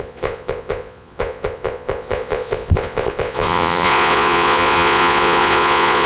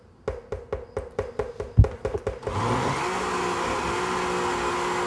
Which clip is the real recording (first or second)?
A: second